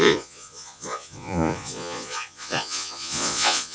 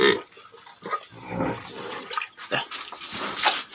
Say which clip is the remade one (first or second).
first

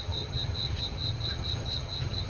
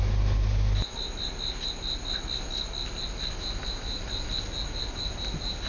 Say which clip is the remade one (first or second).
first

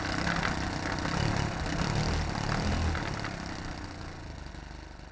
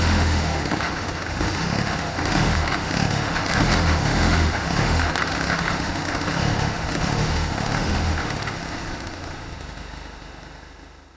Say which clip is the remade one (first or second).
second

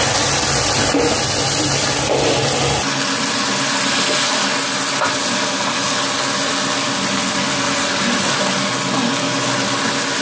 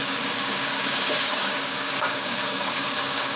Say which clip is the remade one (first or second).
second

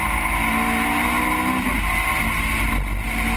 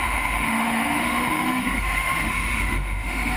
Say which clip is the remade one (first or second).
second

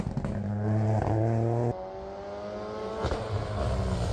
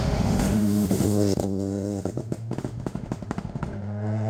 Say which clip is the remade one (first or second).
second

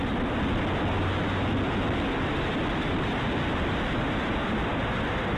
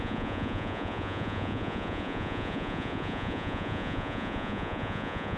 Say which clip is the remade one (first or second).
second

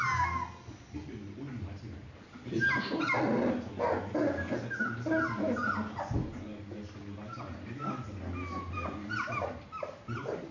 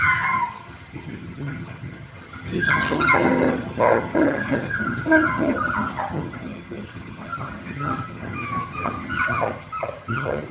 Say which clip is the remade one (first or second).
second